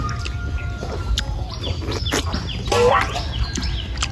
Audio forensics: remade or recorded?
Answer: recorded